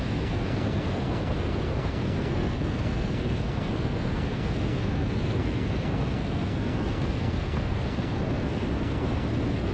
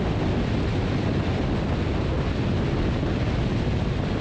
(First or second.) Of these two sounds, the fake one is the first